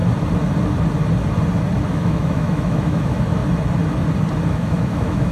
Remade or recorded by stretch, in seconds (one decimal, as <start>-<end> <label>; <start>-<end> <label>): 0.0-1.9 recorded; 1.9-3.4 remade; 3.4-4.5 recorded; 4.5-5.3 remade